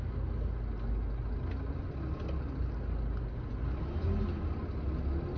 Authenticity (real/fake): real